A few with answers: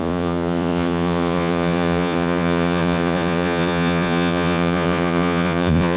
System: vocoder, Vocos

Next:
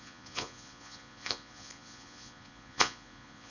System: vocoder, Vocos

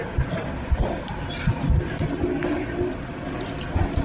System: none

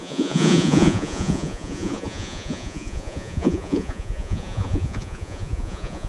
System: vocoder, Vocos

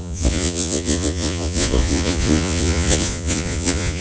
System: vocoder, Vocos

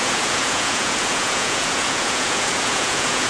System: vocoder, Vocos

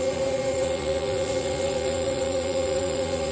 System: vocoder, Vocos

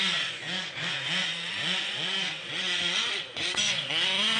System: vocoder, Vocos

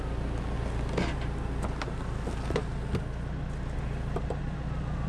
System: none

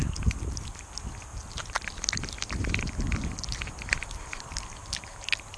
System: none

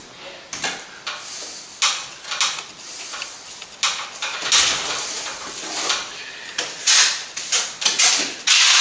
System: none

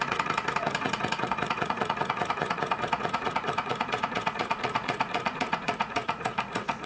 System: vocoder, Vocos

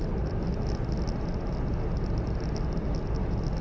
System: none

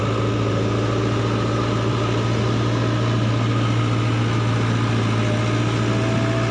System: none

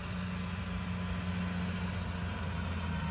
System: none